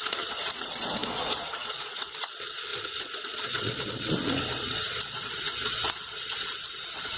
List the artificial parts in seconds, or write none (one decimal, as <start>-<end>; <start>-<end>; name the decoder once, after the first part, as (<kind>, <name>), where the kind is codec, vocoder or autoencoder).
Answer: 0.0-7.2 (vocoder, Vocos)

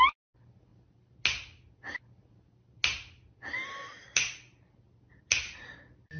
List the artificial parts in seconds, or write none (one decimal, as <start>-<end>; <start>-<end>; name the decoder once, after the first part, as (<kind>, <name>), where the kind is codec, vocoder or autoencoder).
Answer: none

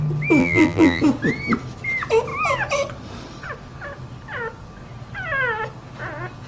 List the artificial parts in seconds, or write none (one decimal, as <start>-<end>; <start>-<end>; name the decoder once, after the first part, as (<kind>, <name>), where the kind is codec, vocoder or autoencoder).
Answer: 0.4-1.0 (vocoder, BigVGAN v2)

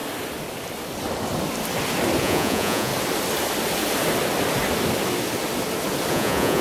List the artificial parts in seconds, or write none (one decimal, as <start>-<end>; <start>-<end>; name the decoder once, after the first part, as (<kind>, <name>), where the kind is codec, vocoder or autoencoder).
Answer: 2.2-2.9 (vocoder, Vocos); 6.1-6.6

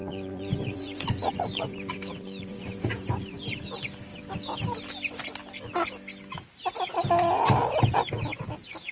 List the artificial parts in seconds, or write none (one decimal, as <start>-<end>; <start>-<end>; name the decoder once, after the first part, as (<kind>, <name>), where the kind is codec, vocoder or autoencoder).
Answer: 0.0-3.4 (vocoder, Vocos)